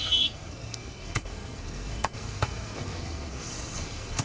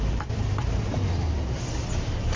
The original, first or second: second